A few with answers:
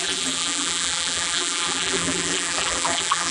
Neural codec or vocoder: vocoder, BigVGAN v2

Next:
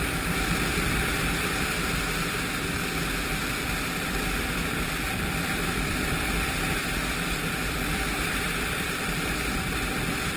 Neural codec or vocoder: vocoder, BigVGAN v2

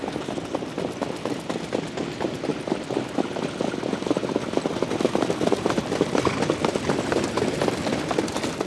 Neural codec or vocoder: none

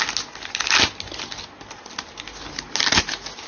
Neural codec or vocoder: none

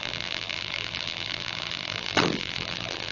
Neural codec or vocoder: vocoder, BigVGAN v2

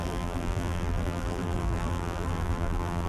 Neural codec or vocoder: vocoder, BigVGAN v2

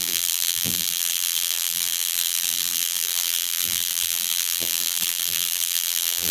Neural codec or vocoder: vocoder, BigVGAN v2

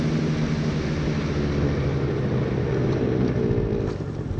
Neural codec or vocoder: none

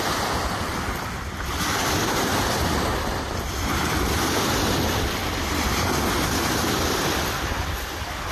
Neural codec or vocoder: none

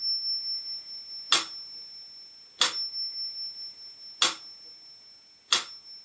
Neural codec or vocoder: none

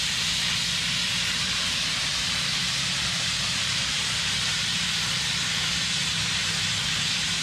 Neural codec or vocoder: vocoder, BigVGAN v2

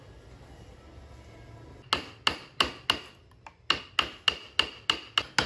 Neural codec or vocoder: none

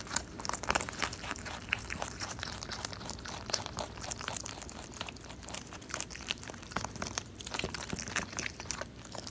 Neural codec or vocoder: vocoder, BigVGAN v2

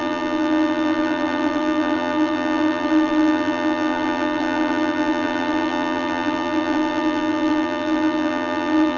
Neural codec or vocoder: vocoder, BigVGAN v2